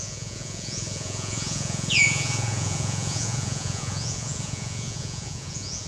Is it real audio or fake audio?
fake